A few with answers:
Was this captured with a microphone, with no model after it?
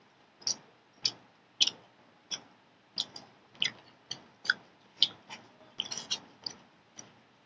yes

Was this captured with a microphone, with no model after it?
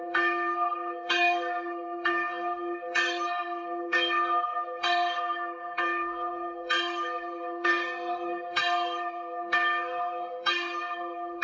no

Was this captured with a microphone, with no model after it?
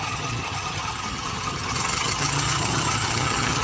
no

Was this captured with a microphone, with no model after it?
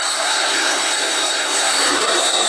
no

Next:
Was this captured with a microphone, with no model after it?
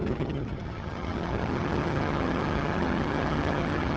no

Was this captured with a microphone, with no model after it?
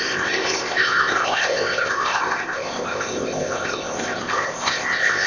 no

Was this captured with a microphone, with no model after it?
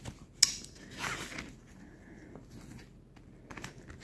yes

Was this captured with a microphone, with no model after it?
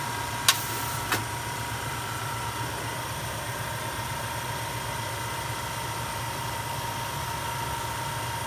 yes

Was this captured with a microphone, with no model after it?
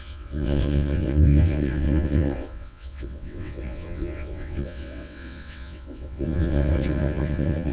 no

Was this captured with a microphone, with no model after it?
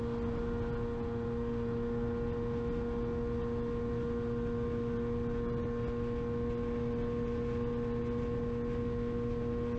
yes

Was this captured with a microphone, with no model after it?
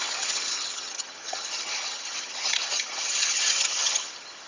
no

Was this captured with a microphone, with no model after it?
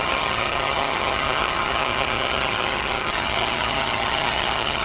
no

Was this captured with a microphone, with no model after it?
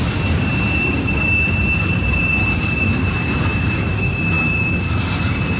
no